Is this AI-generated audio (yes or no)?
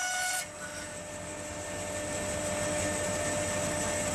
no